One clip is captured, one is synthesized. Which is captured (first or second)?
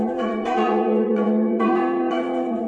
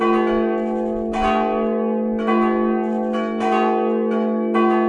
second